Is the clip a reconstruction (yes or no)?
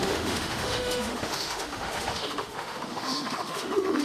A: yes